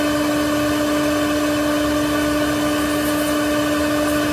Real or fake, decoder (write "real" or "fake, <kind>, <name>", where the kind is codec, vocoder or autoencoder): real